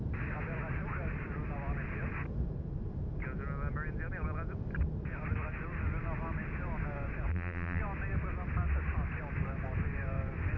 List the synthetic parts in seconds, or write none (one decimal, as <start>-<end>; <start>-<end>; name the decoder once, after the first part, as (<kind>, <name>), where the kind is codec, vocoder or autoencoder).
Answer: 7.3-7.8 (vocoder, BigVGAN v2)